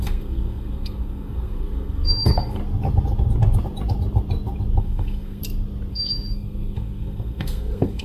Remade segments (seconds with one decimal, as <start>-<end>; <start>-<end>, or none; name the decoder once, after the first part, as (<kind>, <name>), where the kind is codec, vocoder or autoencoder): 0.0-2.6 (codec, SNAC); 4.8-5.4; 5.9-8.0